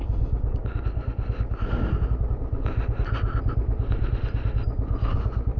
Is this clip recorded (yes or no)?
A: yes